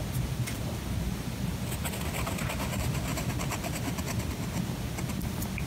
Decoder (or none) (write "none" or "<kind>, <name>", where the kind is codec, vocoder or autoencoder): none